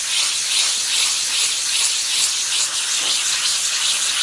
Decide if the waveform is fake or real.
real